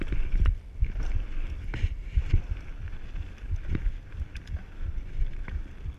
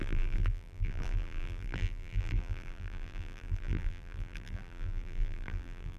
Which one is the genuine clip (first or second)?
first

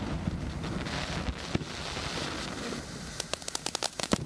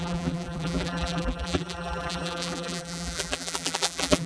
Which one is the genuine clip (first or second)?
first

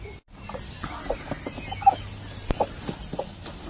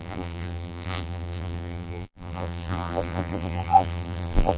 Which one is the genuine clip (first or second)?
first